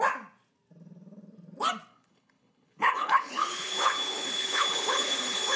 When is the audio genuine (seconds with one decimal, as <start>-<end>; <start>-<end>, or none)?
0.0-1.9